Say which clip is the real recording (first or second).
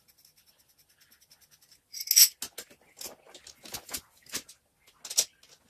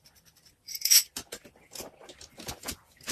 first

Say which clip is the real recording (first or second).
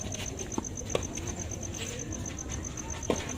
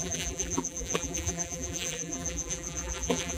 first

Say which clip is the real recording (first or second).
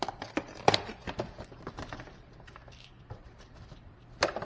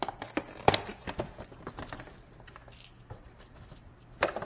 second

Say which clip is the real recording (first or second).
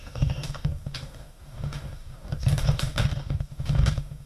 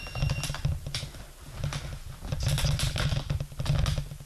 second